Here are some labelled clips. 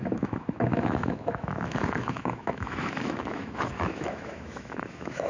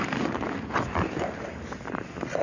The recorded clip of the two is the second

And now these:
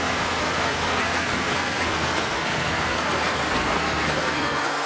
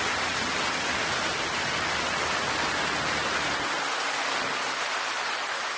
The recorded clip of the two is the second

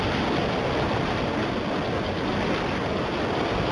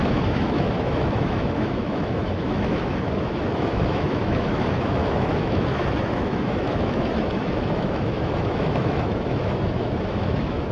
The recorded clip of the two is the first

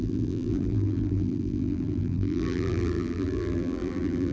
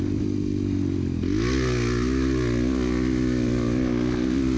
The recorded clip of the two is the second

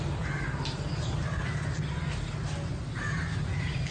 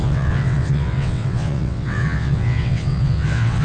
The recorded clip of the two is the first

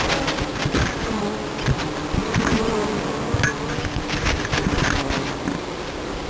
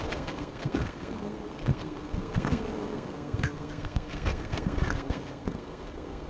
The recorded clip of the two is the first